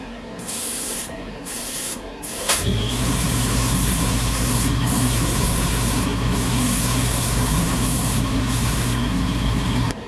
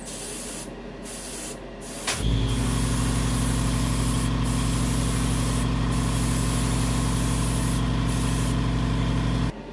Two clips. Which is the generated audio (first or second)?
first